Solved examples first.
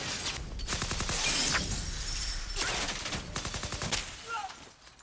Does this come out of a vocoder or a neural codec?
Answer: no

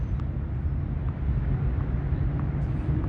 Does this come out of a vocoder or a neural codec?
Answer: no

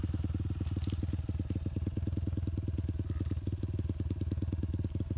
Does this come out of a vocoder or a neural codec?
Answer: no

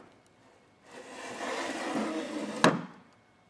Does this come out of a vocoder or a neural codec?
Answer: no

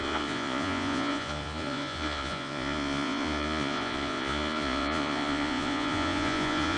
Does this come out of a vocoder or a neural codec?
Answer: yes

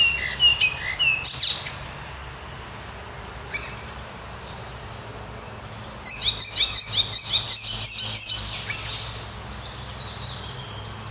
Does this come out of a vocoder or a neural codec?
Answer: no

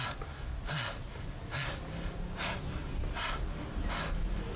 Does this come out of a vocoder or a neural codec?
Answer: no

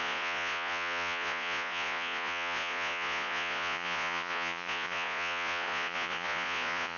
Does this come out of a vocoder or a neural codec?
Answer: yes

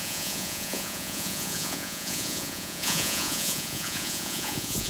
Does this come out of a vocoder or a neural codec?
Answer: yes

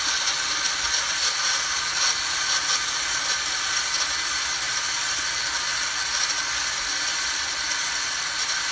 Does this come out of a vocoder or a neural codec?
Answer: no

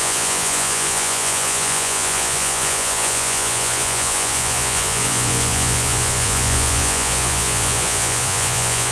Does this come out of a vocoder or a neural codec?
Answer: yes